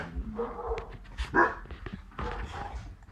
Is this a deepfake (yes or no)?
no